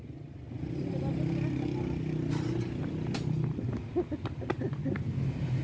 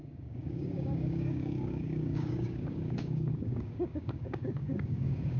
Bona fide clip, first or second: first